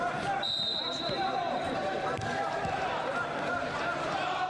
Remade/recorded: remade